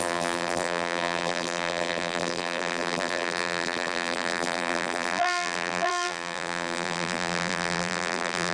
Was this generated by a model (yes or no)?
yes